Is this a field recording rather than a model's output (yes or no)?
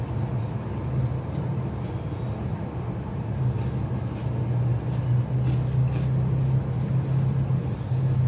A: yes